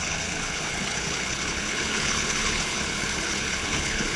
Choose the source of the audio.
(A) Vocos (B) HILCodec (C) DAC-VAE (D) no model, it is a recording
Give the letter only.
B